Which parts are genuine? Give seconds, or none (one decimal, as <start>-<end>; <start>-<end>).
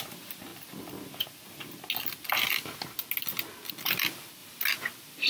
0.0-5.3